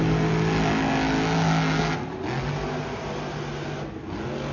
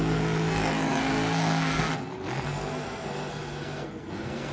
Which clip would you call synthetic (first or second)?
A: second